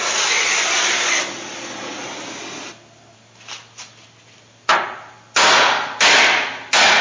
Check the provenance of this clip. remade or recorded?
recorded